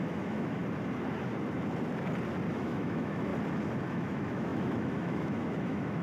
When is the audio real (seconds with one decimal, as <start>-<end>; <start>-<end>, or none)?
0.6-2.5; 3.3-3.9